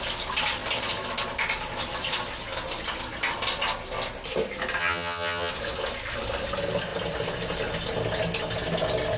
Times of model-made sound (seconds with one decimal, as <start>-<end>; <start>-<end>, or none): 4.8-5.5